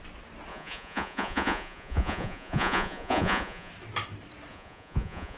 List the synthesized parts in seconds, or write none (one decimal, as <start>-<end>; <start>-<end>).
0.5-3.7; 4.5-5.4